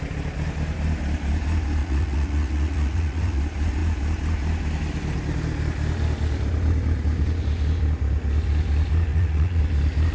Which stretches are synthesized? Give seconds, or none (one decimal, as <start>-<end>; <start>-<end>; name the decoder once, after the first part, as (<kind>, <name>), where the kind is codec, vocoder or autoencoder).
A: 1.8-3.4 (vocoder, Vocos); 9.1-9.6